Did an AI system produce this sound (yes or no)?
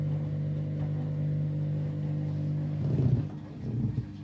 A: no